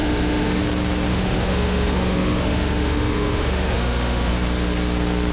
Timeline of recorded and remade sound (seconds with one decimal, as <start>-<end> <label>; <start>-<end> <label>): 0.0-0.6 remade; 0.6-1.1 recorded; 1.1-4.3 remade; 4.3-5.3 recorded